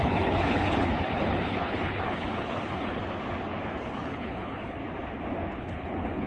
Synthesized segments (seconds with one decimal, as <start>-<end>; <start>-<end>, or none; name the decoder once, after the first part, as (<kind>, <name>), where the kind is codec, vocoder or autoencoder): 0.0-3.0 (codec, HILCodec); 3.8-4.8; 5.6-6.3